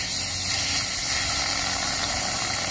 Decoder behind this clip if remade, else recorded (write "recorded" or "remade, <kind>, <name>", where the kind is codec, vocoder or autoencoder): recorded